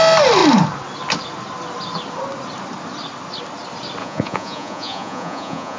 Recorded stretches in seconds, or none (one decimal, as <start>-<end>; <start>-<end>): 0.0-4.0